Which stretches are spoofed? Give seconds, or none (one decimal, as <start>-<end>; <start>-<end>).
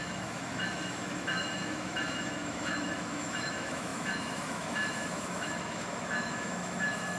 0.0-7.2